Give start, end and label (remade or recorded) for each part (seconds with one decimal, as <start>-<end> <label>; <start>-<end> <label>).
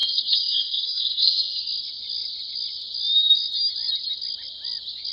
0.0-1.6 remade; 1.6-5.1 recorded